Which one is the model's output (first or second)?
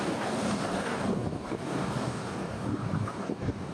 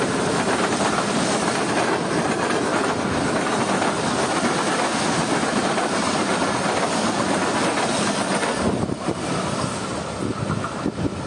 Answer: first